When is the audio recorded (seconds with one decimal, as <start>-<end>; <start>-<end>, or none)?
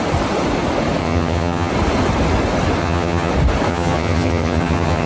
0.0-1.0; 1.7-2.8; 3.3-3.7